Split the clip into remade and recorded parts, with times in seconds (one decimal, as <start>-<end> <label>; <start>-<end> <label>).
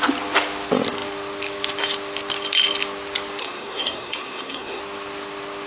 0.0-3.4 recorded; 3.4-4.8 remade; 4.8-5.7 recorded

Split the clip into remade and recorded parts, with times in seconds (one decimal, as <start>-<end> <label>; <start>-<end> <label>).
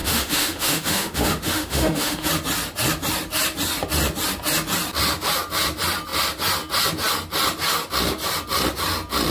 0.0-2.3 remade; 2.3-9.3 recorded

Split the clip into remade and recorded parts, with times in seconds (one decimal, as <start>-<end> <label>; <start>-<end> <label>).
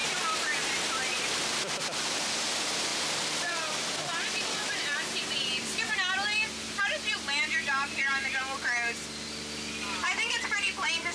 0.0-1.8 remade; 1.8-2.9 recorded; 2.9-5.9 remade; 5.9-11.1 recorded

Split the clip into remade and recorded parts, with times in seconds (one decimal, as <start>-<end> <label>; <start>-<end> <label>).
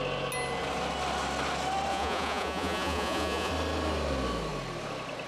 0.0-1.9 recorded; 1.9-3.5 remade; 3.5-5.3 recorded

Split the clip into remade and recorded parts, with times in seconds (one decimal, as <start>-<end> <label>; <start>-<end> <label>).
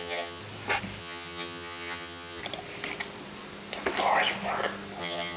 0.0-0.4 remade; 0.4-1.0 recorded; 1.0-2.4 remade; 2.4-5.0 recorded; 5.0-5.4 remade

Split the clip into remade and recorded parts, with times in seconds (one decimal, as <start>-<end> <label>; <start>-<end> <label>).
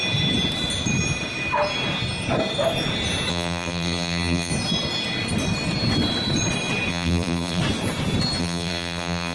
0.0-3.3 recorded; 3.3-4.5 remade; 4.5-6.9 recorded; 6.9-7.6 remade; 7.6-8.4 recorded; 8.4-9.3 remade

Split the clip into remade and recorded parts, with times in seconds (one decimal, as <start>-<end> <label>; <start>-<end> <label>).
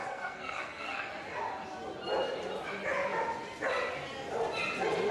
0.0-1.1 remade; 1.1-5.1 recorded